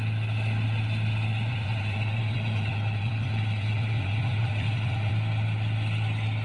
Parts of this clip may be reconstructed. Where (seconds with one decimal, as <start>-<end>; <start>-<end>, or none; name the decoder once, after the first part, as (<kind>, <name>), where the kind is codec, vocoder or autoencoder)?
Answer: 1.3-5.1 (vocoder, Vocos)